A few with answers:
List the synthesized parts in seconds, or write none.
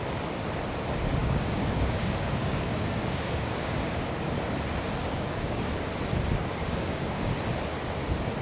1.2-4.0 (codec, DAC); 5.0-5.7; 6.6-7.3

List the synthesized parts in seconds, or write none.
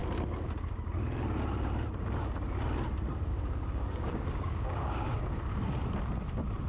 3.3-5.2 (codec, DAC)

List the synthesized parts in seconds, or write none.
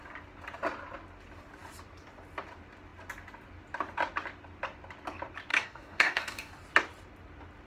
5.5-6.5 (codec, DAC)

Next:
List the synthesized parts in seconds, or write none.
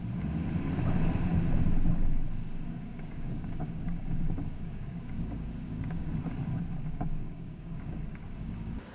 2.5-6.1 (codec, DAC); 6.8-8.9